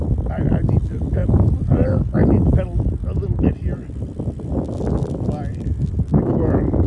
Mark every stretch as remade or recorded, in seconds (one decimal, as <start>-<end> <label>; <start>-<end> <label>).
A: 0.0-6.9 recorded